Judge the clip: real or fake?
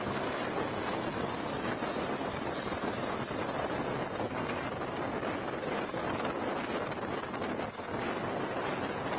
real